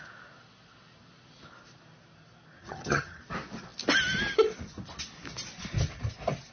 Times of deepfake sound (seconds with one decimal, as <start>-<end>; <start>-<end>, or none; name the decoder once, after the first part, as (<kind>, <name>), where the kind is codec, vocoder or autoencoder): 2.6-3.2 (vocoder, HiFi-GAN)

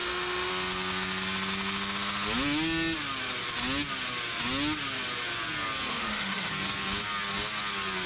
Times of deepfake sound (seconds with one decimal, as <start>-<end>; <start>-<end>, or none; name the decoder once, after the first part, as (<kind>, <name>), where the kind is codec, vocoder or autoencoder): 0.0-0.5 (autoencoder, DAC-VAE); 5.9-6.5

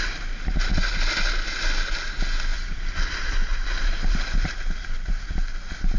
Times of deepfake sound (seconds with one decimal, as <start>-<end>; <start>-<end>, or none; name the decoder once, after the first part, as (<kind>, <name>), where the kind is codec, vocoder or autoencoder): 2.5-4.5 (vocoder, BigVGAN v2)